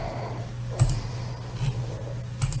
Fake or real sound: real